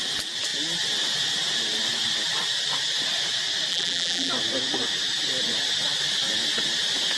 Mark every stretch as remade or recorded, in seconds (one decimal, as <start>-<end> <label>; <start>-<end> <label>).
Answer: 0.0-3.7 recorded; 3.7-4.3 remade; 4.3-7.2 recorded